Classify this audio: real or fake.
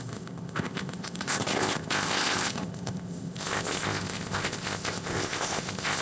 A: fake